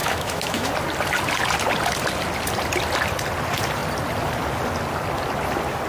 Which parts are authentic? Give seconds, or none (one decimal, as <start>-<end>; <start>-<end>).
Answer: 0.7-5.9